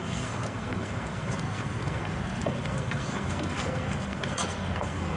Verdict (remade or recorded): remade